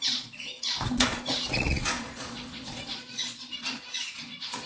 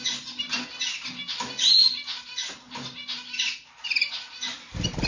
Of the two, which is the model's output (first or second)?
first